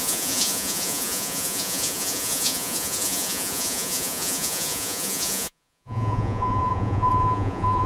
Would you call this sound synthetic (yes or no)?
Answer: yes